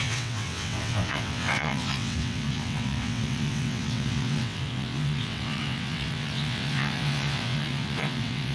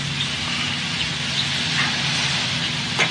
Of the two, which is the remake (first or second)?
first